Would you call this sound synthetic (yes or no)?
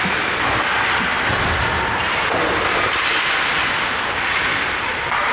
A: no